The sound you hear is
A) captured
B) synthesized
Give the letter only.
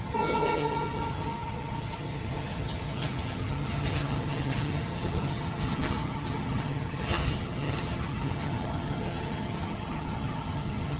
B